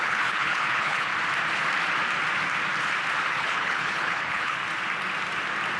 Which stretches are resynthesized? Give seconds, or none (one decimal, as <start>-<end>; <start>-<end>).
0.0-1.1; 3.3-4.6